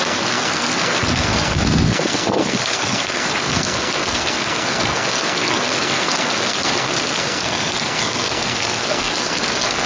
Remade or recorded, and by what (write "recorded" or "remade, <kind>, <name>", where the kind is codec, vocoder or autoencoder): remade, codec, SNAC